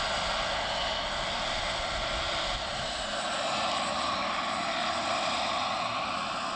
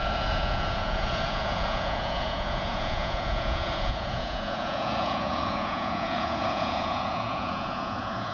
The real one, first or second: first